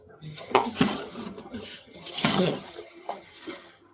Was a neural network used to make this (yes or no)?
yes